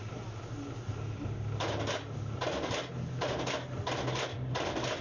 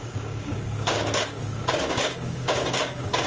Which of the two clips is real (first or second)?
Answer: first